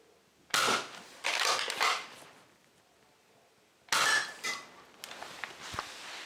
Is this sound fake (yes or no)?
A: no